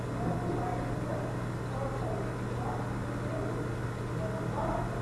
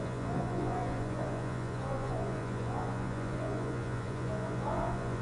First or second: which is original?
first